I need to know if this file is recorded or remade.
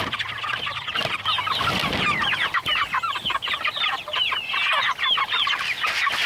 recorded